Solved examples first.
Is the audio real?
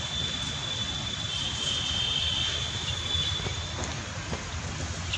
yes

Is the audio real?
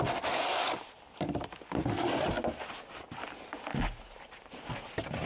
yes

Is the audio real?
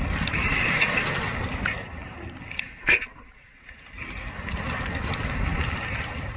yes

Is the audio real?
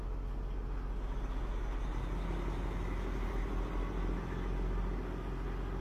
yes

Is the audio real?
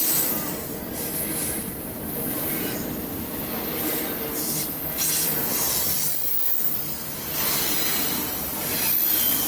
yes